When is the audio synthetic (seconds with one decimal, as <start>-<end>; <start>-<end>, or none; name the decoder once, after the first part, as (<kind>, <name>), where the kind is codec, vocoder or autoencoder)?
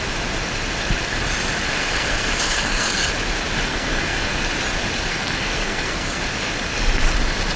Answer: 1.8-3.1 (codec, SNAC); 3.7-4.4; 5.1-6.2